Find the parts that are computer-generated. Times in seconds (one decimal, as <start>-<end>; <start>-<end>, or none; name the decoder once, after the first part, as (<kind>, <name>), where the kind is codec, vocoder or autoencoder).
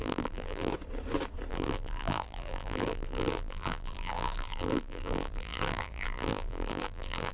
0.0-0.7 (vocoder, BigVGAN v2); 1.5-7.3